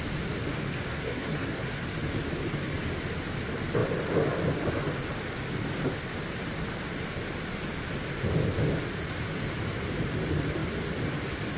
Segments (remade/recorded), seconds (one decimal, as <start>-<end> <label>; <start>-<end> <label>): 0.0-0.9 recorded; 0.9-1.8 remade; 1.8-11.6 recorded

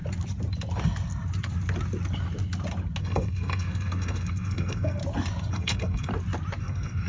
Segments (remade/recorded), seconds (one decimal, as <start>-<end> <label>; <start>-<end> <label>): 0.0-3.0 recorded; 3.0-5.0 remade; 5.0-5.5 recorded; 5.5-6.1 remade; 6.1-6.6 recorded; 6.6-7.1 remade

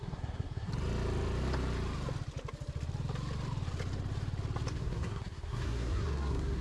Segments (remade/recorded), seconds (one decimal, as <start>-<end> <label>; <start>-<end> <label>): 0.0-0.7 remade; 0.7-4.7 recorded; 4.7-6.6 remade

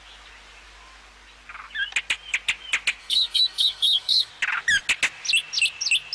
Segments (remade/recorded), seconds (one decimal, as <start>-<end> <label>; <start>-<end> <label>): 0.0-3.0 recorded; 3.0-4.3 remade; 4.3-6.1 recorded

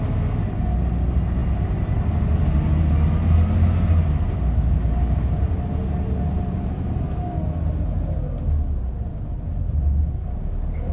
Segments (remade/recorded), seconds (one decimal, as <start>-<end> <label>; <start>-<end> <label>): 0.0-10.9 recorded

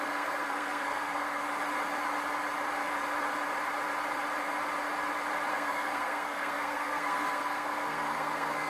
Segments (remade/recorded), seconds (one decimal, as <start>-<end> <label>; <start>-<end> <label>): 0.0-1.4 remade; 1.4-5.5 recorded; 5.5-8.7 remade

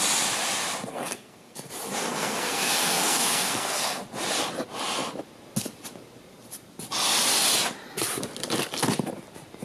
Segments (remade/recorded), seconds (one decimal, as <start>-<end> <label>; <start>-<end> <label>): 0.0-0.9 recorded; 0.9-1.7 remade; 1.7-2.1 recorded; 2.1-4.0 remade; 4.0-9.6 recorded

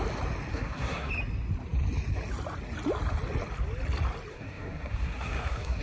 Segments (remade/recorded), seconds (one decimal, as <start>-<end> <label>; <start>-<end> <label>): 0.0-0.5 recorded; 0.5-1.1 remade; 1.1-4.3 recorded; 4.3-5.8 remade